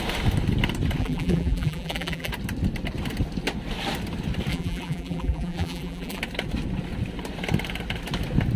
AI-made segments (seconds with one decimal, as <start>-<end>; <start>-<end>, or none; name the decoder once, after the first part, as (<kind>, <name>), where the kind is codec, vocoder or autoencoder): 1.0-2.3 (vocoder, BigVGAN v2); 4.5-6.2